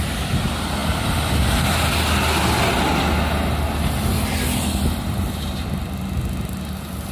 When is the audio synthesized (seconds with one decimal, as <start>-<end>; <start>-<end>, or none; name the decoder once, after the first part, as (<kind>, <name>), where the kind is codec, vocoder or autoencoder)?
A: none